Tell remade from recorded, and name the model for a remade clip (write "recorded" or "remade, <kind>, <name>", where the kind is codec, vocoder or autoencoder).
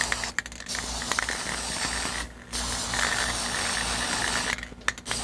recorded